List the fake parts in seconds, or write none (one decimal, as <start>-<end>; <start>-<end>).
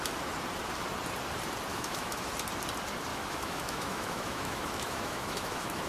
1.7-2.3; 3.1-5.9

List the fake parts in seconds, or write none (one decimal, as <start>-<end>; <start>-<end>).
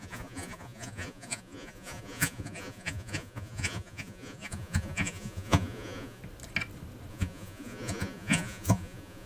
0.0-6.2; 7.1-9.3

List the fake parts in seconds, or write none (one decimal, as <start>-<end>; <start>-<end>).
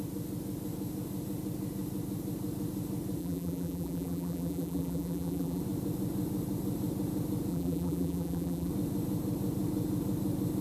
3.2-5.6; 7.5-8.7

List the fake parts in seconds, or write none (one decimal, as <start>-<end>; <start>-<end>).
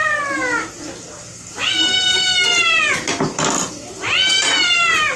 none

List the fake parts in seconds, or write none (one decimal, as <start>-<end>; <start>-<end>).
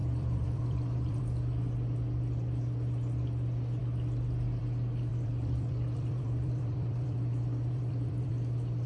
0.0-1.2; 5.1-8.3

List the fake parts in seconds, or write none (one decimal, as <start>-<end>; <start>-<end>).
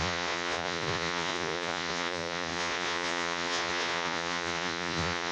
0.0-5.3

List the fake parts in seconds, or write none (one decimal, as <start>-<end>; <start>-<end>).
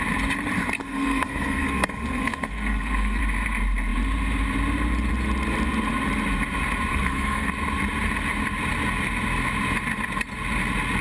0.8-3.2; 6.9-7.5